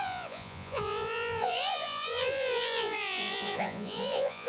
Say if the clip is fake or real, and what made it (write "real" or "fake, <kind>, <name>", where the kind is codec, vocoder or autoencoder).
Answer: fake, vocoder, Vocos